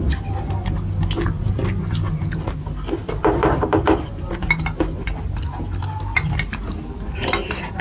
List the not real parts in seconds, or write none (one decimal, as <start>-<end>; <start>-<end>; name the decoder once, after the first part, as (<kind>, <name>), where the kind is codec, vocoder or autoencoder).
none